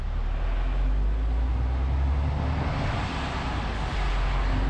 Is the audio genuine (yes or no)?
yes